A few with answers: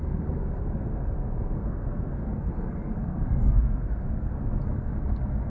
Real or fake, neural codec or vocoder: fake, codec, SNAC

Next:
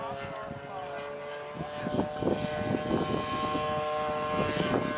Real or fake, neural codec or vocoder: real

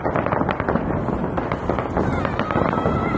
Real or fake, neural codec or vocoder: real